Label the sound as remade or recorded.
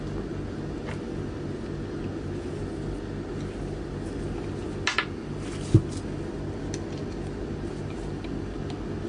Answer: recorded